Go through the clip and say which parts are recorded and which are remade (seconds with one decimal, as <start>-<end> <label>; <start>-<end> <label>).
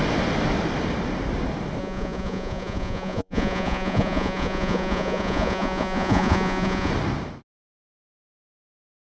0.0-1.8 recorded; 1.8-6.9 remade; 6.9-9.2 recorded